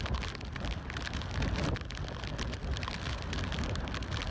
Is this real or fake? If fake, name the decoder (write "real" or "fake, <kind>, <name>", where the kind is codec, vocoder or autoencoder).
real